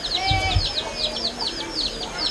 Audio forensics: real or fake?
real